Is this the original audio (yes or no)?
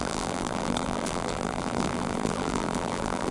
no